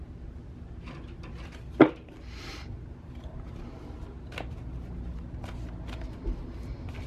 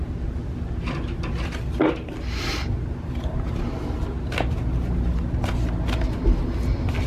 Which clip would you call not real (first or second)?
first